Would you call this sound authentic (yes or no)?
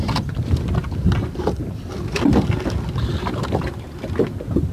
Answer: yes